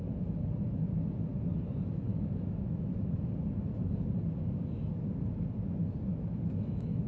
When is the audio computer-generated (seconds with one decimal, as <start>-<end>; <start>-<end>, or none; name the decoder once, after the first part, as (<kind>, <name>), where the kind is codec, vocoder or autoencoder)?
2.1-3.3 (autoencoder, DAC-VAE); 6.1-7.1